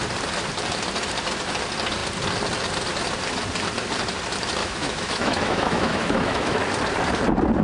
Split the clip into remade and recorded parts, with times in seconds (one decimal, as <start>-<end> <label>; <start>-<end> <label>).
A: 0.0-4.6 recorded; 4.6-6.6 remade; 6.6-7.6 recorded